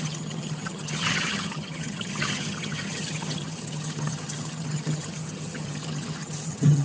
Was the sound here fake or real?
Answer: fake